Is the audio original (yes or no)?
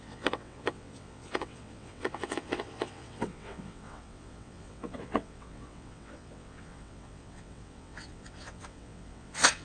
no